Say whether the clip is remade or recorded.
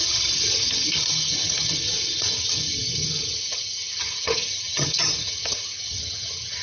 remade